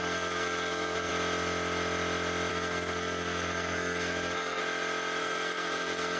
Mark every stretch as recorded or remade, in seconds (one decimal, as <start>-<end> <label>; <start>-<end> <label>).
0.0-1.1 remade; 1.1-2.5 recorded; 2.5-4.6 remade; 4.6-5.2 recorded; 5.2-6.2 remade